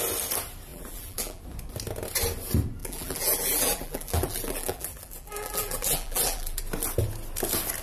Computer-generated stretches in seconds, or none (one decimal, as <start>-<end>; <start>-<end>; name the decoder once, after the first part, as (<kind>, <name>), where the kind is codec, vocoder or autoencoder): 0.7-1.4 (vocoder, BigVGAN v2); 2.8-6.6